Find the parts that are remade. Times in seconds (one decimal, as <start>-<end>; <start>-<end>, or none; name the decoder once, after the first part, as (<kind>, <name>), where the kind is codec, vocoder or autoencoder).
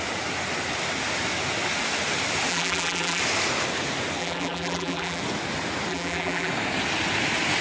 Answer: 2.5-3.2 (vocoder, BigVGAN v2); 4.2-5.2; 5.9-6.5